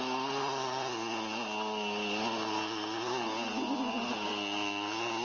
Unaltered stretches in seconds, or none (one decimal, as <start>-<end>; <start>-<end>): 0.0-5.2